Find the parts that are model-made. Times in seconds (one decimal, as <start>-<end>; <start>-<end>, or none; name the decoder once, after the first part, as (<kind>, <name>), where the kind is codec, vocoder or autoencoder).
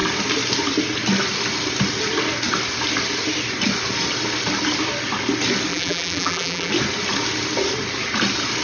5.7-6.7 (vocoder, BigVGAN v2)